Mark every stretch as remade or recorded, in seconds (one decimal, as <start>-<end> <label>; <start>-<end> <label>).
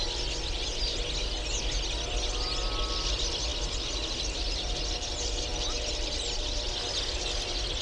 0.0-7.8 recorded